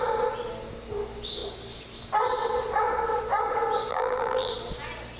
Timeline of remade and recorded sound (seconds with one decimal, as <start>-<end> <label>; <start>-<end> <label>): 0.0-3.9 recorded; 3.9-4.5 remade; 4.5-5.2 recorded